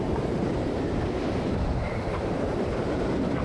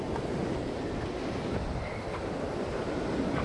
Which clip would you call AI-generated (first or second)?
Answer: first